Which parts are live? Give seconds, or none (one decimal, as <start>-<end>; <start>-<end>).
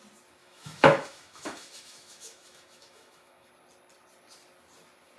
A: 0.0-0.4; 3.5-5.2